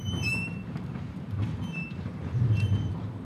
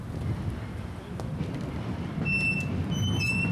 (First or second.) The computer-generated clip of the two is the first